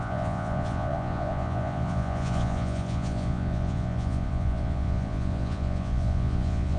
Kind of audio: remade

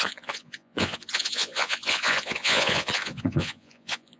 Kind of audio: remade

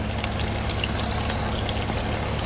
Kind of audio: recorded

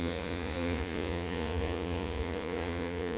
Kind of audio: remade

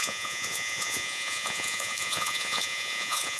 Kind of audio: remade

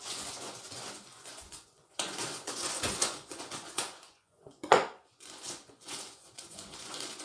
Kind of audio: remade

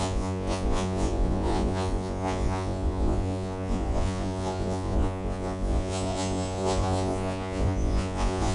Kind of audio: remade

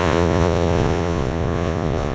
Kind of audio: remade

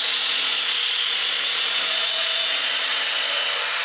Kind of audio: remade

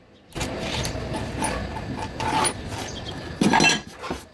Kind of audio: recorded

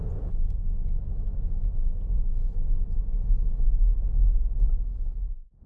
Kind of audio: recorded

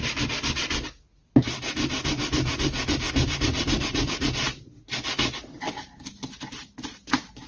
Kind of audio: recorded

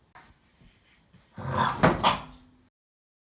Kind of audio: recorded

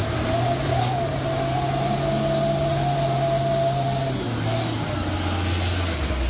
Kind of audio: recorded